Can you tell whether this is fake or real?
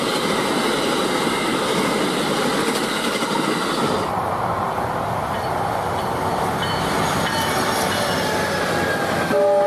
real